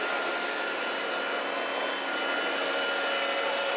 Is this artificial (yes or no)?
no